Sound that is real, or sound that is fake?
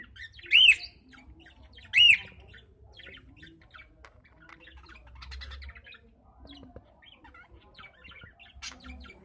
real